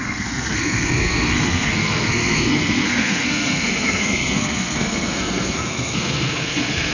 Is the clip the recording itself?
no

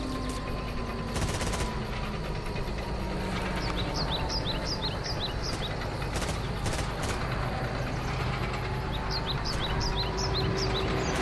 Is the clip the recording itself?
yes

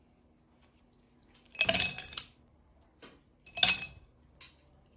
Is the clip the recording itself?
yes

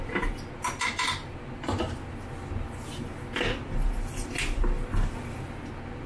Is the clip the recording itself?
yes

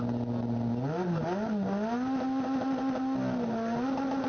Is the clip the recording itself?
yes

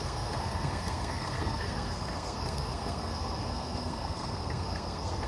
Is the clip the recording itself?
no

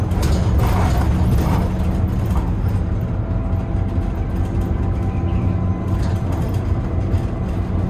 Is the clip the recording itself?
yes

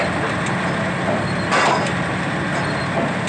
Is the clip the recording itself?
yes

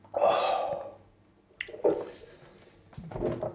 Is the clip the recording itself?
yes